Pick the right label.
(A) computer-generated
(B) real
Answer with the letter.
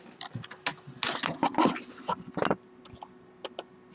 B